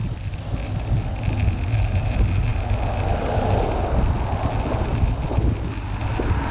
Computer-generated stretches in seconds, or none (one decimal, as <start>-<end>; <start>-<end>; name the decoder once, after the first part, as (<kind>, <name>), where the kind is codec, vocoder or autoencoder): none